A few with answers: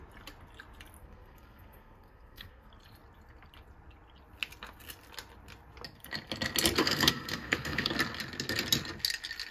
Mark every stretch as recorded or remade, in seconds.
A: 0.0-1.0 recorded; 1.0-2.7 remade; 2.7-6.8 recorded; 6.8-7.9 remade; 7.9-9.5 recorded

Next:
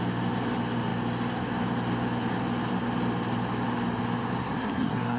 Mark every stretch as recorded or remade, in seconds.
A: 0.0-4.4 recorded; 4.4-5.2 remade

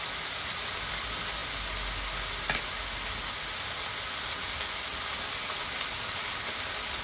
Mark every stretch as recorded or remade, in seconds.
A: 0.0-7.0 recorded

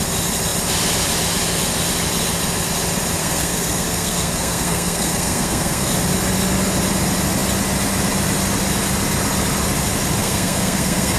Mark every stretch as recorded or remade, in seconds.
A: 0.0-3.2 recorded; 3.2-5.9 remade; 5.9-10.2 recorded; 10.2-11.2 remade

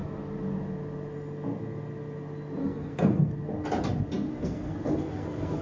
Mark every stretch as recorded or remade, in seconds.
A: 0.0-2.6 recorded; 2.6-3.3 remade; 3.3-4.3 recorded; 4.3-5.6 remade

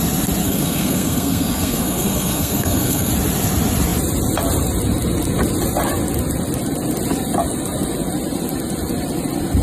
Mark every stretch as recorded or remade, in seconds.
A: 0.0-0.4 recorded; 0.4-3.1 remade; 3.1-9.6 recorded

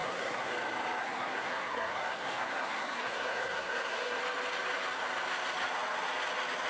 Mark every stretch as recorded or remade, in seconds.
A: 0.0-0.5 remade; 0.5-1.0 recorded; 1.0-4.2 remade; 4.2-6.7 recorded

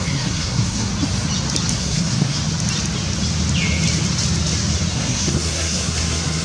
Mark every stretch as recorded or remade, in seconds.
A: 0.0-0.9 remade; 0.9-1.7 recorded; 1.7-2.4 remade; 2.4-4.9 recorded; 4.9-6.4 remade